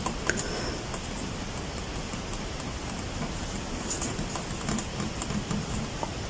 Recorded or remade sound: recorded